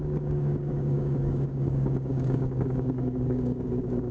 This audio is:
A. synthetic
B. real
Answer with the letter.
A